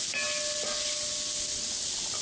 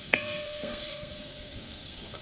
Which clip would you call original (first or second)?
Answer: first